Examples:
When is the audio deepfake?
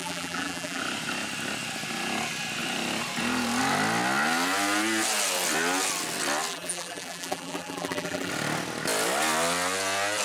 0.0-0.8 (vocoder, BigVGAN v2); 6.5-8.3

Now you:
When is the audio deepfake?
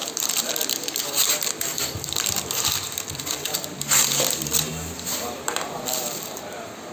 none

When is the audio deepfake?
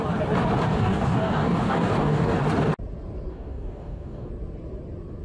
0.7-2.4 (codec, DAC); 3.3-4.3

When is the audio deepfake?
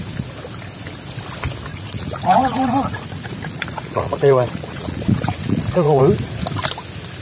1.7-6.0 (vocoder, Vocos)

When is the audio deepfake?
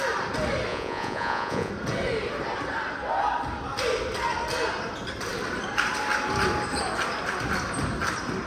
0.7-1.7 (vocoder, Vocos)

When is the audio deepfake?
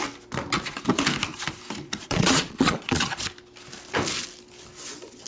2.0-3.2 (vocoder, Vocos)